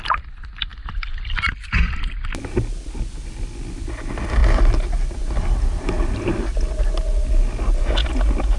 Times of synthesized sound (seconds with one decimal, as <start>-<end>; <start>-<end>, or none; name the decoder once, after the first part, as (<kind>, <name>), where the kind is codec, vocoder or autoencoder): none